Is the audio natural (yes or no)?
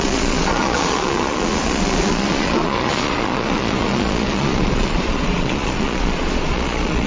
no